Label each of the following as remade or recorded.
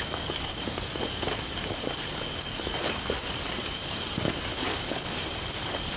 remade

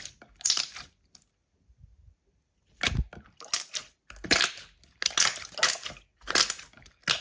recorded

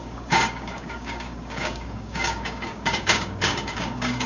remade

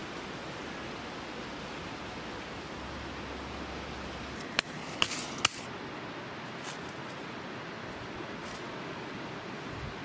recorded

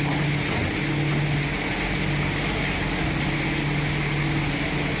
recorded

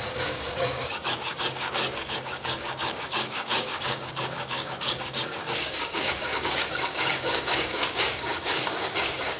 remade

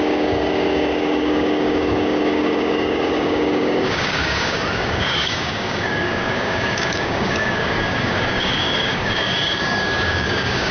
remade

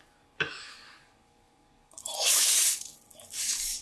remade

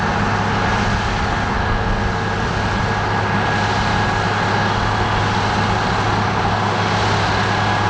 recorded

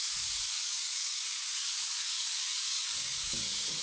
remade